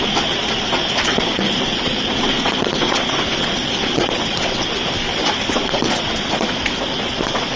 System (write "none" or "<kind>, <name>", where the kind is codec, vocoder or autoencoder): vocoder, Vocos